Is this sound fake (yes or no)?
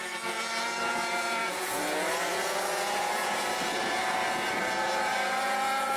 yes